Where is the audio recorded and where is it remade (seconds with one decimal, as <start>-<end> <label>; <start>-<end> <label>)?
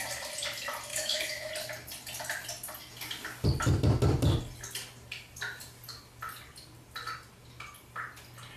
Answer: 0.0-0.9 recorded; 0.9-1.5 remade; 1.5-8.6 recorded